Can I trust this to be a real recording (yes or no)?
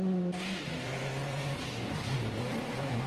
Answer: yes